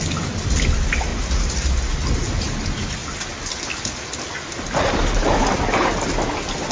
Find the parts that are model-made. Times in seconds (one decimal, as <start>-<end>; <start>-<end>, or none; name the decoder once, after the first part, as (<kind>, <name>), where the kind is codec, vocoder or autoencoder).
1.1-1.8 (vocoder, BigVGAN v2)